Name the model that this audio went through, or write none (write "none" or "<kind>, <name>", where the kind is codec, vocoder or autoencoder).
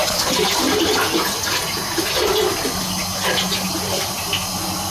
none